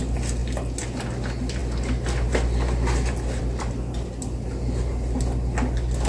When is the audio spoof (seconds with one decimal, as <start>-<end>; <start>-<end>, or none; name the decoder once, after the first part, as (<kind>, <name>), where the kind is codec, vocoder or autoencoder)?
none